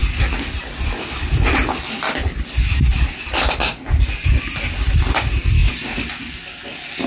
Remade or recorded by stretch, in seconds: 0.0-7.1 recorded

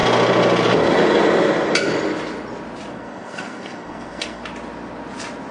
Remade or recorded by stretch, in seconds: 0.0-2.9 recorded; 2.9-4.4 remade; 4.4-5.5 recorded

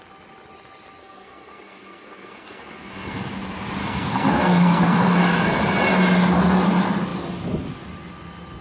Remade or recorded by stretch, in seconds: 0.0-1.0 recorded; 1.0-3.3 remade; 3.3-3.8 recorded; 3.8-5.6 remade; 5.6-8.6 recorded